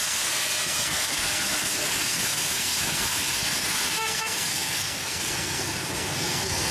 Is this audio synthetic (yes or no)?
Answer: yes